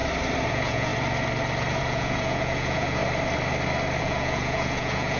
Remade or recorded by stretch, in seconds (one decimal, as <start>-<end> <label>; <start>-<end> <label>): 0.0-0.5 recorded; 0.5-0.9 remade; 0.9-1.8 recorded; 1.8-3.0 remade; 3.0-4.0 recorded; 4.0-5.2 remade